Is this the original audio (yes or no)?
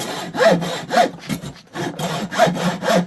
no